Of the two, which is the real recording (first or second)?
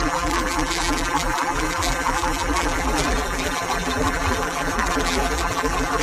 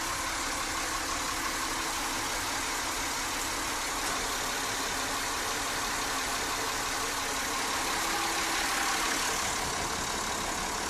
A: second